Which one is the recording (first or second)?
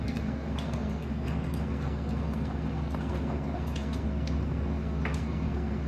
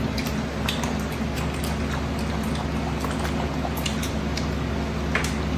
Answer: second